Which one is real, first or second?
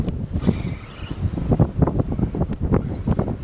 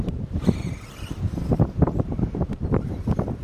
first